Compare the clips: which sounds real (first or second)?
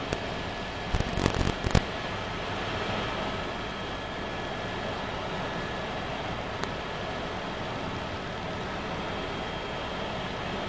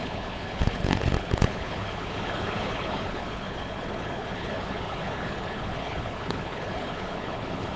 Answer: first